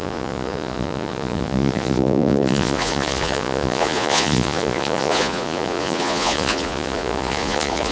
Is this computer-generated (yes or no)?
yes